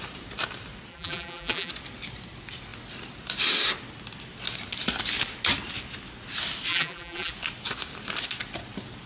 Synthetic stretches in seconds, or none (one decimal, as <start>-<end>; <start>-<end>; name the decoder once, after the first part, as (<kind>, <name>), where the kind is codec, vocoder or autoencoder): 0.9-1.7 (vocoder, BigVGAN v2); 6.7-7.3

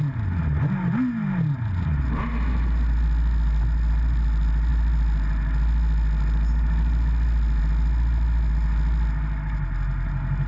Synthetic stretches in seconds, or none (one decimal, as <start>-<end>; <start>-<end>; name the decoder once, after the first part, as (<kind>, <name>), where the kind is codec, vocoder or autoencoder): none

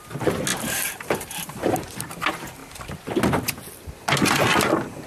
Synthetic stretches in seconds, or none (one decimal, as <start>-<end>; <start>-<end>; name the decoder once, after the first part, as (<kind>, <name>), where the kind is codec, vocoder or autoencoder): 0.5-2.1 (vocoder, BigVGAN v2)

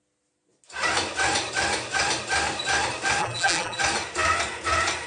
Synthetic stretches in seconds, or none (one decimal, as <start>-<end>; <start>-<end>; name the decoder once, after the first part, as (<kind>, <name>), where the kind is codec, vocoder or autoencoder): 3.2-3.8 (vocoder, BigVGAN v2)

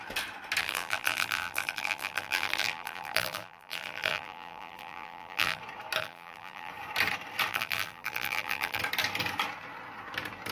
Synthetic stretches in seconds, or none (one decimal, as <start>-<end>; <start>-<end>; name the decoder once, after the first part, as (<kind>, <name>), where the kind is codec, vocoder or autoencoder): 0.6-5.6 (vocoder, BigVGAN v2); 6.0-6.7; 7.5-8.8

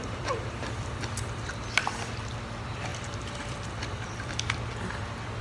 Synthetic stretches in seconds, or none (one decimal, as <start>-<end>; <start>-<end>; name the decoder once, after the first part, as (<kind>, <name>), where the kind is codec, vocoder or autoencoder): 0.0-1.5 (vocoder, BigVGAN v2); 2.9-4.4

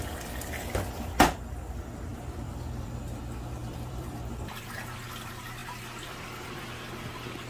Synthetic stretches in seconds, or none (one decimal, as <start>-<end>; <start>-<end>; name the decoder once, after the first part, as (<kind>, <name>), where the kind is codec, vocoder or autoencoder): 2.1-3.2 (vocoder, BigVGAN v2); 3.6-4.6; 5.6-6.6